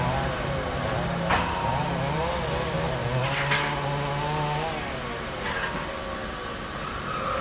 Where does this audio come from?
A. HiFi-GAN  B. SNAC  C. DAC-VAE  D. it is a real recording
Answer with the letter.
D